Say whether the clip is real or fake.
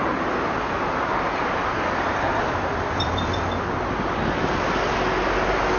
fake